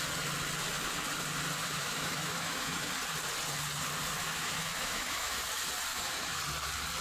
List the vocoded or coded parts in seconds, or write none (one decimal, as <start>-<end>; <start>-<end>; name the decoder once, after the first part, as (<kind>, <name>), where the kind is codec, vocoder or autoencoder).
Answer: 1.6-2.9 (autoencoder, DAC-VAE); 4.2-5.4; 5.9-6.4